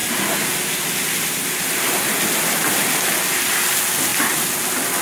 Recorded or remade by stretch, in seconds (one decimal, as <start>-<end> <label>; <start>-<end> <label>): 0.0-5.0 recorded